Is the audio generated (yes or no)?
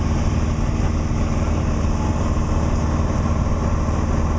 no